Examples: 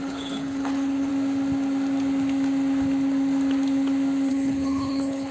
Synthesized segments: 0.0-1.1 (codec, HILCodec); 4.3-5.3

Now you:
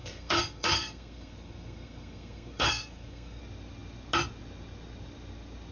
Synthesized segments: 0.0-3.4 (codec, SNAC)

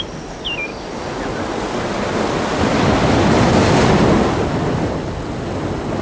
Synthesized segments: none

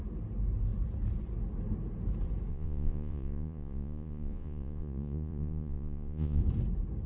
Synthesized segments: 2.5-6.4 (vocoder, Vocos)